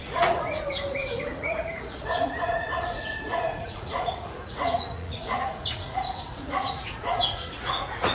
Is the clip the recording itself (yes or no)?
no